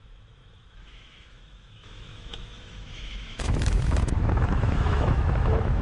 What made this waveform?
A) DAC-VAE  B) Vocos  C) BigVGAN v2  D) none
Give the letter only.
A